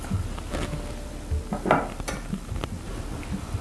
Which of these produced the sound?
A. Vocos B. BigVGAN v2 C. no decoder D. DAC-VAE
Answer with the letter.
B